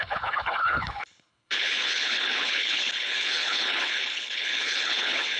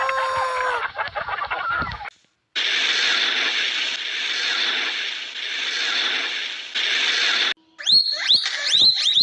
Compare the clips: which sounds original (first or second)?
second